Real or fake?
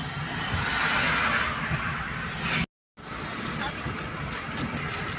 real